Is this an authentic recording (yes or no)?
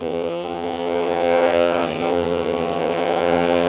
no